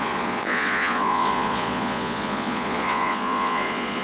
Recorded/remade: remade